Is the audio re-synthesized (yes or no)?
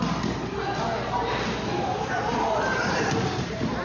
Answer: no